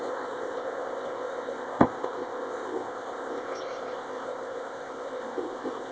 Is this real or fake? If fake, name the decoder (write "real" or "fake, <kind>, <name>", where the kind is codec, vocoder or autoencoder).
fake, codec, ZipCodec